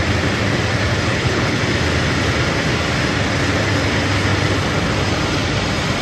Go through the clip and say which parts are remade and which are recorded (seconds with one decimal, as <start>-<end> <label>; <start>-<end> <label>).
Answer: 0.0-1.1 recorded; 1.1-1.6 remade; 1.6-6.0 recorded